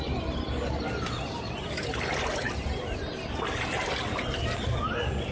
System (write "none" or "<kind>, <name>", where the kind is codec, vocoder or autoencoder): none